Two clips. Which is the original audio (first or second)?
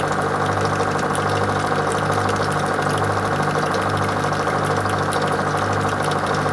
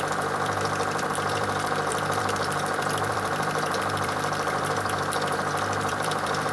first